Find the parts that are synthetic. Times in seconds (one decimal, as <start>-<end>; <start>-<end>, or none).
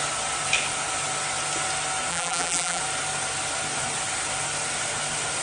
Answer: 2.1-2.8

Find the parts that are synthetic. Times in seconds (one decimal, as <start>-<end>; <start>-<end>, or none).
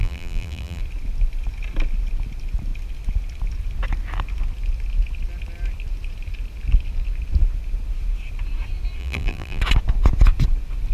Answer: 0.0-0.8; 9.0-9.6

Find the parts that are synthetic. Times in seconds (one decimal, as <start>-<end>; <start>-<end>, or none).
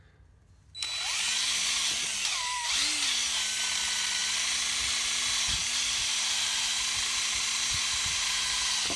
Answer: 5.6-6.7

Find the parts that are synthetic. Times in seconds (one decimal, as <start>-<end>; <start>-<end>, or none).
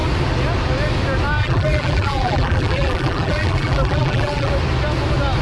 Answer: 1.4-4.5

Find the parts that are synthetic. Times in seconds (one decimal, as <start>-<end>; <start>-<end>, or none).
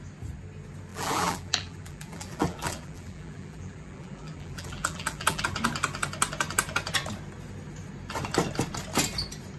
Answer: 0.9-5.4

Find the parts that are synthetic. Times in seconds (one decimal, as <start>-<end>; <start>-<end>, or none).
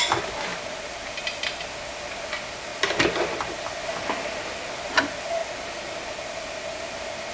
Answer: none